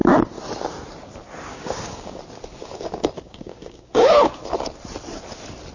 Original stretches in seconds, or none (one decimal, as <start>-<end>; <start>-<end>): 0.0-1.5; 2.2-2.6; 4.4-5.7